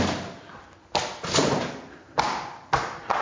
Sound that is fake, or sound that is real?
real